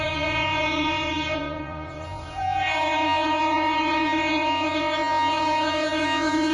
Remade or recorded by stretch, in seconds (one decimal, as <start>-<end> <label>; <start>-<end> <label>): 0.0-6.5 remade

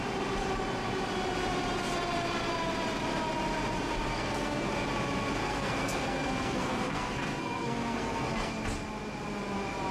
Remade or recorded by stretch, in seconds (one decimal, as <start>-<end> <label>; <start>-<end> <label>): 0.0-4.1 recorded; 4.1-4.7 remade; 4.7-5.4 recorded; 5.4-8.6 remade; 8.6-9.9 recorded

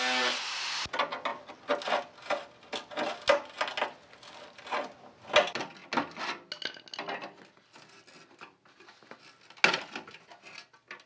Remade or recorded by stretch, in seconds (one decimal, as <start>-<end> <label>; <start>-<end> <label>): 0.0-11.1 recorded

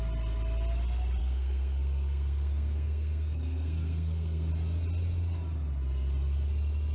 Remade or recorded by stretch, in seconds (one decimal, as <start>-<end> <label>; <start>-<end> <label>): 0.0-1.2 recorded; 1.2-4.5 remade; 4.5-6.9 recorded

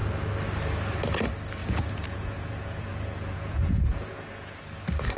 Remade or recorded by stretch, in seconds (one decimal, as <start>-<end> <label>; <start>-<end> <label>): 0.0-1.6 recorded; 1.6-4.6 remade; 4.6-5.2 recorded

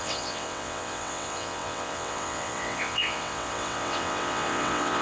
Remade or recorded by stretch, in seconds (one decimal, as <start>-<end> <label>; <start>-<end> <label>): 0.0-5.0 remade

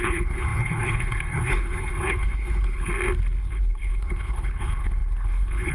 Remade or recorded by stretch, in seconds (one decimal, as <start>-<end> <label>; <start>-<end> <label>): 0.0-2.9 remade; 2.9-3.4 recorded; 3.4-5.7 remade